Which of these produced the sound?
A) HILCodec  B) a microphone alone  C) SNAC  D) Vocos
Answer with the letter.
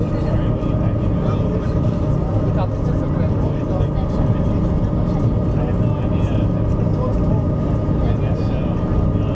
B